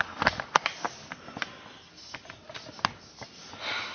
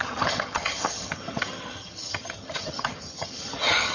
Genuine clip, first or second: first